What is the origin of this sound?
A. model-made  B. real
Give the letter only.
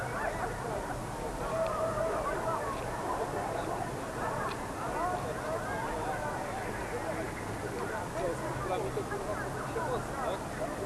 B